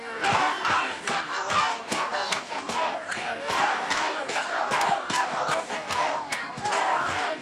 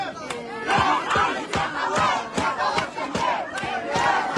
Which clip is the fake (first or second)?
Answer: first